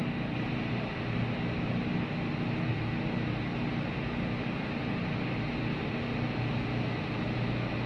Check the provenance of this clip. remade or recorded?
recorded